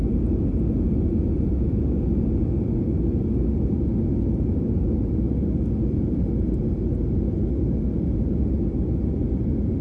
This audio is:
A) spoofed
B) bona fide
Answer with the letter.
B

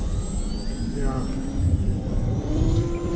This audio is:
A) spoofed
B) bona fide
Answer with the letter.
A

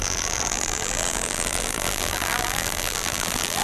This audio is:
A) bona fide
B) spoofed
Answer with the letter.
B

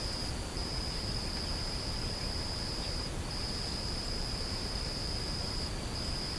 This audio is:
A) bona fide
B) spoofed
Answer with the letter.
B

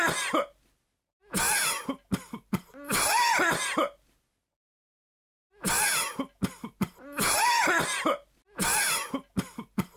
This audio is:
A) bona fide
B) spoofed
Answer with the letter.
A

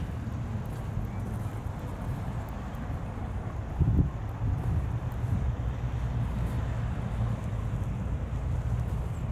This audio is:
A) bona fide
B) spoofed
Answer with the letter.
A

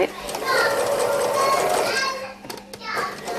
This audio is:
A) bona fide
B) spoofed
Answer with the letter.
A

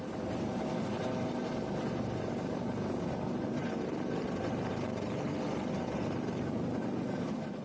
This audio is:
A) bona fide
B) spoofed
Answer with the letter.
A